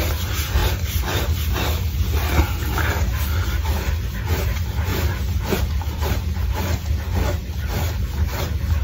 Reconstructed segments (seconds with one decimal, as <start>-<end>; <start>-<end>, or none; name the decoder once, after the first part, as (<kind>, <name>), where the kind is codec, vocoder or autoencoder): 4.9-6.1 (vocoder, BigVGAN v2)